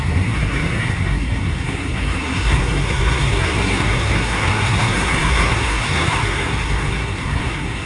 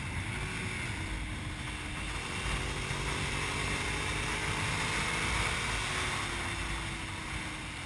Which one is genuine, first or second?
second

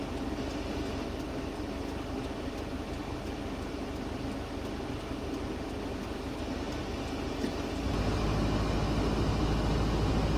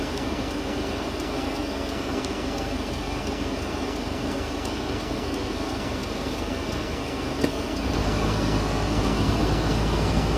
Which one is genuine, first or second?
first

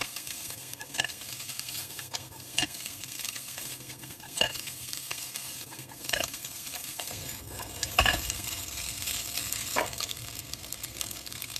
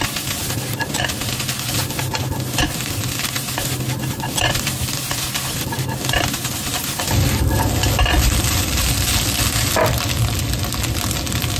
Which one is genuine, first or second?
second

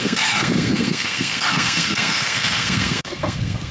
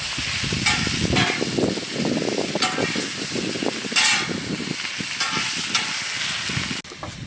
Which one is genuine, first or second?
second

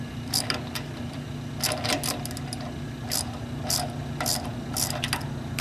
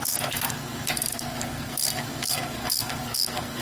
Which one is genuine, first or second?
first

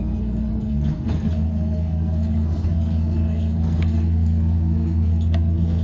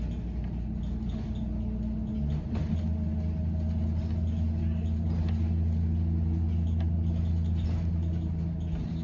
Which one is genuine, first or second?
second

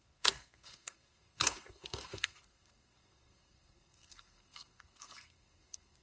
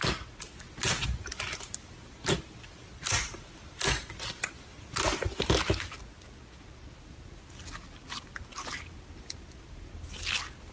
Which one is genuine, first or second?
second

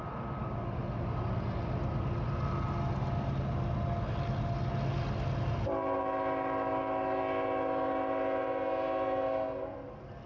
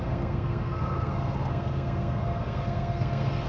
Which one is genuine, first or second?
first